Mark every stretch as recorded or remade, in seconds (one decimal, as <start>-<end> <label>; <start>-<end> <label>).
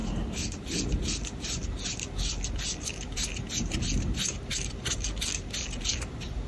0.0-6.5 remade